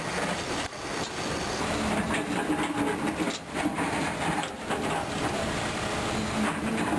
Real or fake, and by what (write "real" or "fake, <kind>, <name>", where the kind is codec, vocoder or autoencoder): fake, vocoder, BigVGAN v2